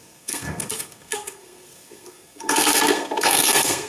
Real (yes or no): no